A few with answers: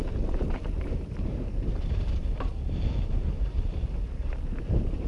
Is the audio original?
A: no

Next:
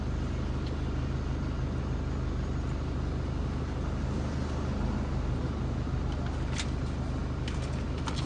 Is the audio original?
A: yes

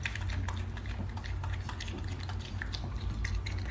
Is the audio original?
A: yes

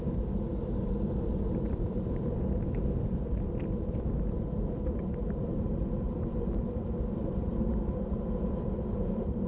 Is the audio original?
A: yes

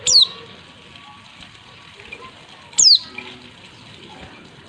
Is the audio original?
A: yes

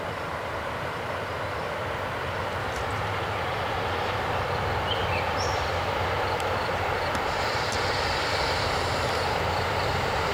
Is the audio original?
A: no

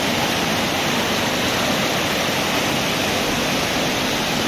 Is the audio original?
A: no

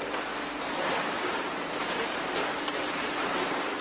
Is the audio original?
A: yes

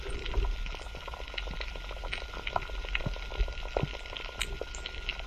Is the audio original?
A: yes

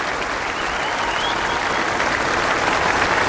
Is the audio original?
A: yes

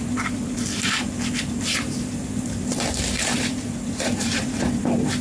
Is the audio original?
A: no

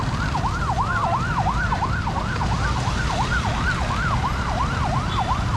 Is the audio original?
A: yes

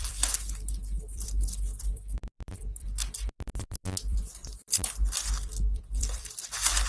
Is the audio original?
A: no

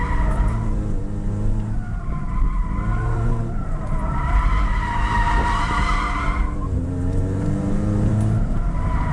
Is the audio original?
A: no